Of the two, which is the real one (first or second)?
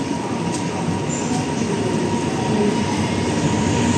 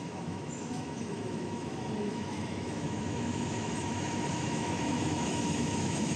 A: first